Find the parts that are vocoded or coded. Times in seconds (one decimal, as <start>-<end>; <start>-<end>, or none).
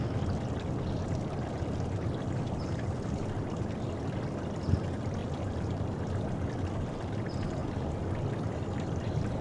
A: 5.2-5.8